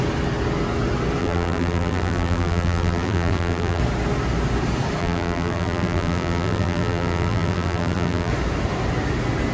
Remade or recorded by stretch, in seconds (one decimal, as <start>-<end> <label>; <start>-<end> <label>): 0.0-1.2 recorded; 1.2-3.8 remade; 3.8-5.0 recorded; 5.0-8.3 remade; 8.3-9.5 recorded